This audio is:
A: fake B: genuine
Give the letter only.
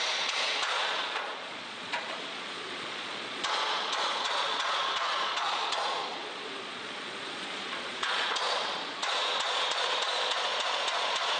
A